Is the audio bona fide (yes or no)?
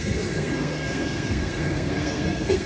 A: no